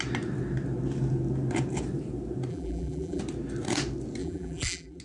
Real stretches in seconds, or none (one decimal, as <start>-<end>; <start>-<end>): 0.0-2.5; 3.2-4.2

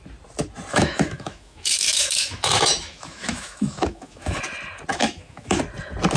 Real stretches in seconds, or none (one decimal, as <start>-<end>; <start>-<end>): 0.0-0.7; 4.4-4.9; 5.6-6.2

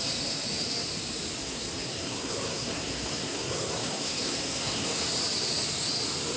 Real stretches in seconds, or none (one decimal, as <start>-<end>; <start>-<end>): 0.0-1.4; 5.0-6.4